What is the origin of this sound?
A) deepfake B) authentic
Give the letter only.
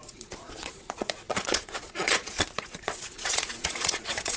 A